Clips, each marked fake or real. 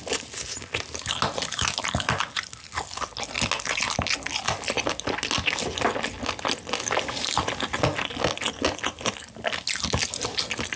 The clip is real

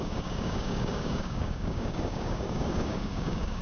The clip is fake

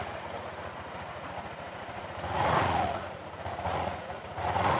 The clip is fake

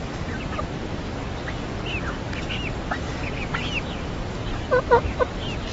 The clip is real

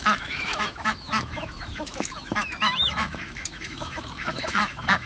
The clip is fake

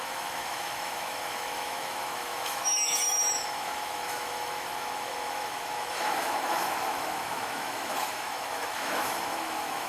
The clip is fake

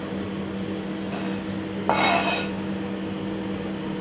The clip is real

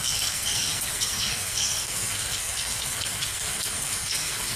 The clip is fake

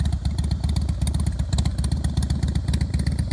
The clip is real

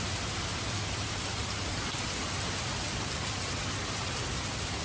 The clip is real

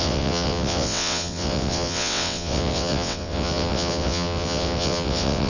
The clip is fake